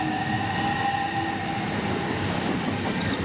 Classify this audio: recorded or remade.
recorded